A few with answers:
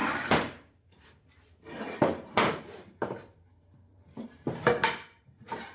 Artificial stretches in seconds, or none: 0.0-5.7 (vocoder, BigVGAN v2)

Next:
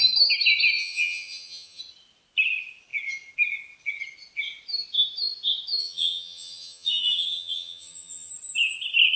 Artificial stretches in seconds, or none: 0.8-1.8 (vocoder, HiFi-GAN); 5.8-8.3

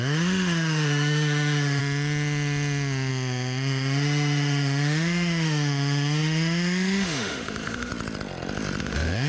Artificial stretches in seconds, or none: 0.0-1.8 (autoencoder, DAC-VAE); 3.1-7.9; 8.8-9.3

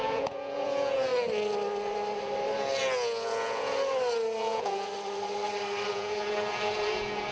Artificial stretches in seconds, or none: 0.0-1.1 (vocoder, Vocos); 4.4-4.9; 5.9-7.3